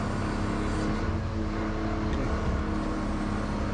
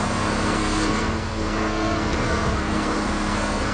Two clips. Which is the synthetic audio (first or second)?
second